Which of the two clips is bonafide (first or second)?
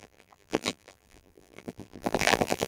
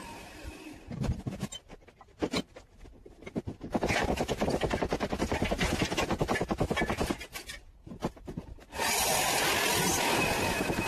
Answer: second